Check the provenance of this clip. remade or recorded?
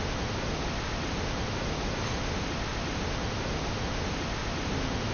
recorded